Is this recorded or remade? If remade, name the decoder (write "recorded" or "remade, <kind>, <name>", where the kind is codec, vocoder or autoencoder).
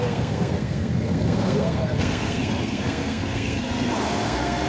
remade, codec, SNAC